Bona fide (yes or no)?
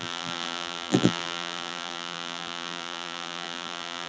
no